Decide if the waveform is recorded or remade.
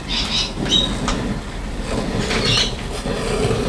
recorded